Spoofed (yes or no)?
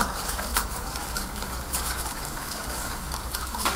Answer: yes